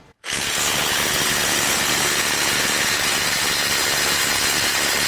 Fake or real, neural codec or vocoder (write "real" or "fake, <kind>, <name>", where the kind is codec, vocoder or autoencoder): fake, vocoder, Vocos